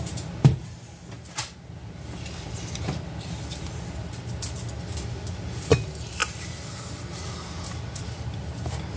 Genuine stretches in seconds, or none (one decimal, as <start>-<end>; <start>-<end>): 0.0-9.0